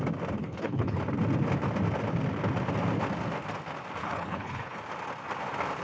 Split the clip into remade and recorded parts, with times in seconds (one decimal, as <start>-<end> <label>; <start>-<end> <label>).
0.0-0.4 recorded; 0.4-1.0 remade; 1.0-4.0 recorded; 4.0-4.8 remade; 4.8-5.8 recorded

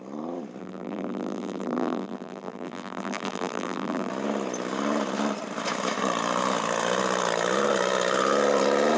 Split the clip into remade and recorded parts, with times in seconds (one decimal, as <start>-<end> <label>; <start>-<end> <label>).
0.0-0.6 recorded; 0.6-4.1 remade; 4.1-9.0 recorded

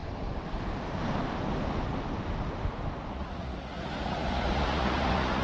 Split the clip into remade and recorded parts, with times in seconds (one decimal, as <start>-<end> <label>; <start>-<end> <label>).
0.0-3.1 recorded; 3.1-5.4 remade

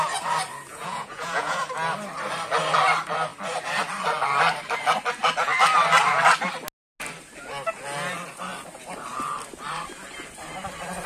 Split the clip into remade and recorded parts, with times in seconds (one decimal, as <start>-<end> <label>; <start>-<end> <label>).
0.0-0.7 recorded; 0.7-1.6 remade; 1.6-11.1 recorded

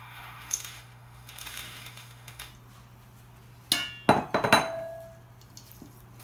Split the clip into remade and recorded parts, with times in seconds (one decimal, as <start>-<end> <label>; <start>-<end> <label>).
0.0-2.5 remade; 2.5-6.2 recorded

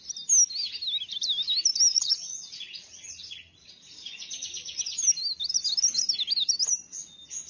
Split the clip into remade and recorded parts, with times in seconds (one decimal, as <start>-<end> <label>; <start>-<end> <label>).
0.0-1.9 recorded; 1.9-4.9 remade; 4.9-7.5 recorded

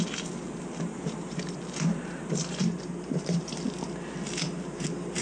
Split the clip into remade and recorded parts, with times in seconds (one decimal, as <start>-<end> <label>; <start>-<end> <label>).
0.0-0.9 recorded; 0.9-1.4 remade; 1.4-2.6 recorded; 2.6-3.6 remade; 3.6-5.2 recorded

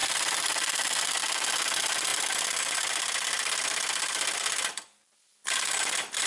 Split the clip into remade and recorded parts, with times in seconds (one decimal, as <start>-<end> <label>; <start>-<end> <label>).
0.0-1.2 remade; 1.2-2.1 recorded; 2.1-6.3 remade